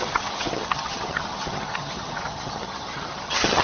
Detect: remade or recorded remade